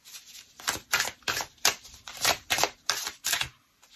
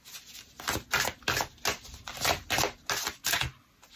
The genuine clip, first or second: second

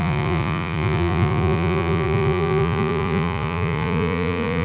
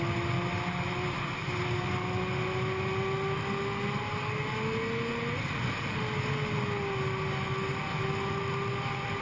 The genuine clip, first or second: second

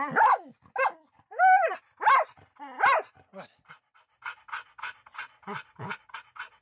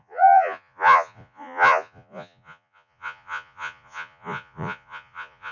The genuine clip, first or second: first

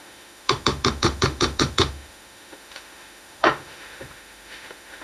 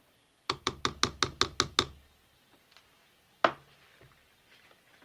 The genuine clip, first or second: second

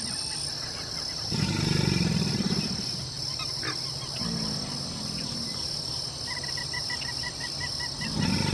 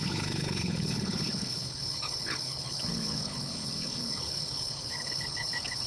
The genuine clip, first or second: first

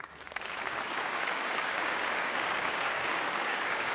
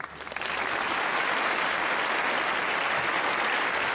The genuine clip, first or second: second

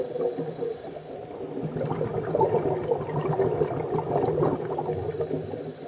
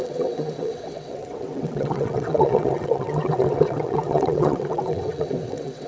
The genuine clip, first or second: first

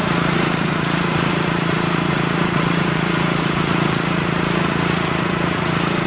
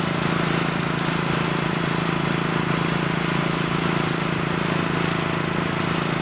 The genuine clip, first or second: second